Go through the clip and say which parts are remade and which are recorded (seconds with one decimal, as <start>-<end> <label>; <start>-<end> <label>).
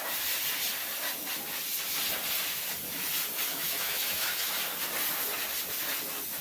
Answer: 0.0-3.5 recorded; 3.5-4.5 remade; 4.5-6.4 recorded